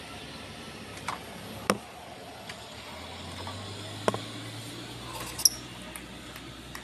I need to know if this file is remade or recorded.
recorded